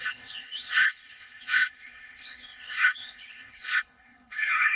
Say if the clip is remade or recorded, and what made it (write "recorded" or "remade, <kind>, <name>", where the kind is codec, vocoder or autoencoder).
remade, codec, HILCodec